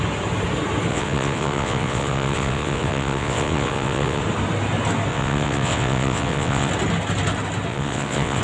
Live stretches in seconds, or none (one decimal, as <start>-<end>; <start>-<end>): 0.0-0.9; 4.2-5.1; 6.7-7.7